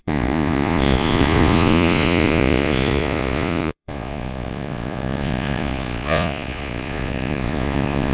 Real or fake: fake